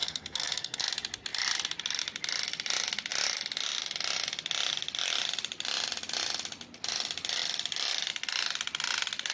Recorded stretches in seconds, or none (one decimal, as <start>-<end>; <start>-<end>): 0.8-9.3